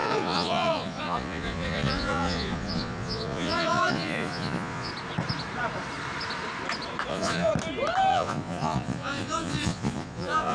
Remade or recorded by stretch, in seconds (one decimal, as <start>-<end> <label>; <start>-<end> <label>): 0.0-4.9 remade; 4.9-7.1 recorded; 7.1-7.5 remade; 7.5-8.1 recorded; 8.1-10.5 remade